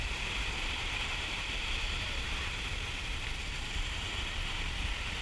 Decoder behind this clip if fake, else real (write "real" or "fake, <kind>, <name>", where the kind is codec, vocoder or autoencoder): fake, vocoder, BigVGAN v2